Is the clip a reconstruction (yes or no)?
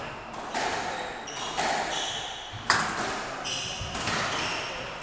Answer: no